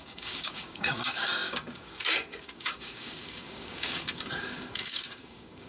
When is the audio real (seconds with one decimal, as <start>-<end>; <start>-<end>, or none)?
none